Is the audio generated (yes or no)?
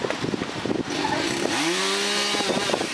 no